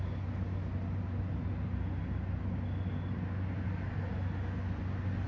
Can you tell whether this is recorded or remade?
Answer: recorded